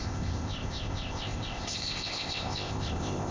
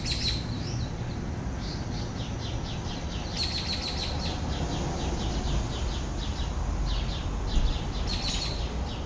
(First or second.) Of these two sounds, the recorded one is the second